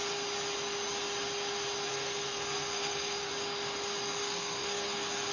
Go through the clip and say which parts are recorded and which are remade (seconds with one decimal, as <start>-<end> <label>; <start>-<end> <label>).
0.0-1.9 recorded; 1.9-3.3 remade; 3.3-4.2 recorded; 4.2-5.3 remade

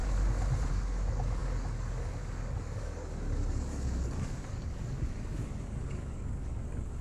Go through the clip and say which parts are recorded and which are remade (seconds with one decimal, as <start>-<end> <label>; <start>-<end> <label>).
0.0-0.7 recorded; 0.7-7.0 remade

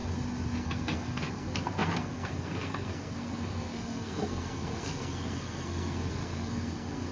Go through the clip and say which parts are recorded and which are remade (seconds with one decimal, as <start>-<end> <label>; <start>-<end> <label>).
0.0-0.6 recorded; 0.6-7.1 remade

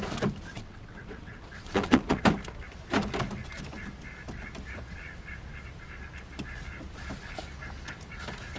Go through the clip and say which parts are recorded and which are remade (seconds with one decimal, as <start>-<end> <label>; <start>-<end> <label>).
0.0-0.5 recorded; 0.5-2.2 remade; 2.2-8.6 recorded

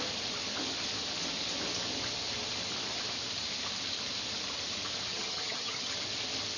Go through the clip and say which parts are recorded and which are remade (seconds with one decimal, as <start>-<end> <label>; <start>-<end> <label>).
0.0-5.1 recorded; 5.1-5.9 remade; 5.9-6.6 recorded

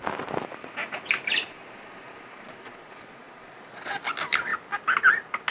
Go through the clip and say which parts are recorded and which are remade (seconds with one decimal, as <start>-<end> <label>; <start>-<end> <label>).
0.0-1.5 recorded; 1.5-3.9 remade; 3.9-5.5 recorded

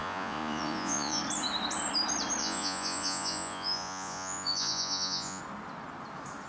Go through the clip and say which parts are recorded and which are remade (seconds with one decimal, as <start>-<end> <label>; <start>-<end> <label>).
0.0-1.2 remade; 1.2-2.4 recorded; 2.4-5.4 remade; 5.4-6.5 recorded